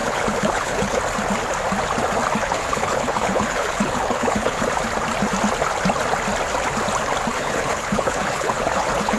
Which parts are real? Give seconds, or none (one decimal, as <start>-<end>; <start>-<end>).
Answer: 1.0-2.4; 4.7-7.3